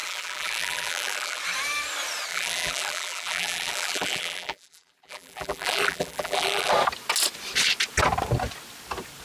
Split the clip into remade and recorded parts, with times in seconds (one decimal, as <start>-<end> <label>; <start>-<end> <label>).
0.0-1.4 remade; 1.4-2.3 recorded; 2.3-6.7 remade; 6.7-9.2 recorded